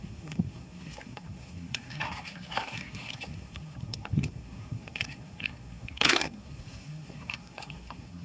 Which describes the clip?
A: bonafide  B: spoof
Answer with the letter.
B